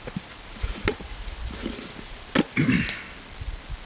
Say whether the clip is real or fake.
real